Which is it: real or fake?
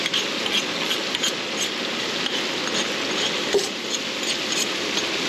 real